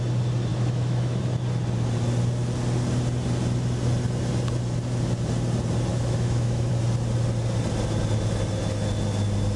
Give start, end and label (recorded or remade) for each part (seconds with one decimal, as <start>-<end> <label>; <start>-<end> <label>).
0.0-0.5 recorded; 0.5-1.2 remade; 1.2-5.9 recorded; 5.9-6.7 remade; 6.7-9.6 recorded